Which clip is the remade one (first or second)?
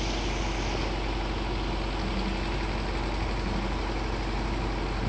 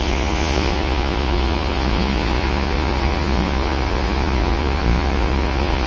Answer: second